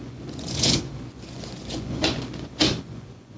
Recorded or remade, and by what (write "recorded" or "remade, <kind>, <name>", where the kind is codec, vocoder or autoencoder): remade, vocoder, Vocos